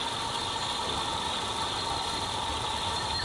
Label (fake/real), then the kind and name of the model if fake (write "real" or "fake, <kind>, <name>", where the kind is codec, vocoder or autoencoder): real